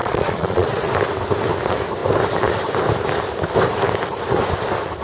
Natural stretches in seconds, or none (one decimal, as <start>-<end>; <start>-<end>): 0.9-5.0